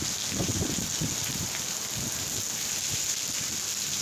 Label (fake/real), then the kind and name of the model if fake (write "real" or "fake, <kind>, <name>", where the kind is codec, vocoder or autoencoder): real